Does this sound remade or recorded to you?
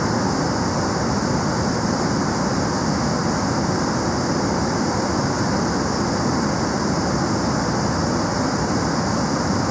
recorded